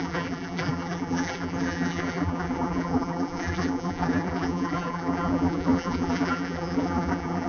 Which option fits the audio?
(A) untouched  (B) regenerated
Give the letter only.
B